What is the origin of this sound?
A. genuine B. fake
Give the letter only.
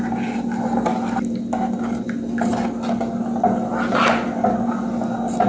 A